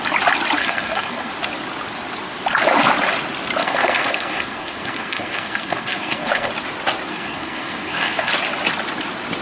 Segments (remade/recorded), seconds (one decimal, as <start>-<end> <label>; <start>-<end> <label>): 0.0-0.6 recorded; 0.6-1.3 remade; 1.3-3.6 recorded; 3.6-6.5 remade; 6.5-7.1 recorded; 7.1-8.3 remade; 8.3-9.4 recorded